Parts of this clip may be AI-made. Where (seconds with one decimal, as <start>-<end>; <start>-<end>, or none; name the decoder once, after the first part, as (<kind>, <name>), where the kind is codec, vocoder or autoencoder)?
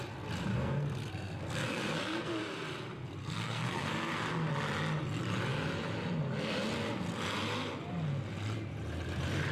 0.5-2.3 (codec, SNAC); 3.2-4.5